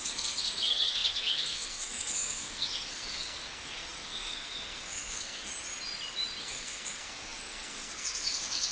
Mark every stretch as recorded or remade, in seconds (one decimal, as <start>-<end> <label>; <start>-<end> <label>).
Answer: 0.0-5.5 remade; 5.5-6.4 recorded; 6.4-8.7 remade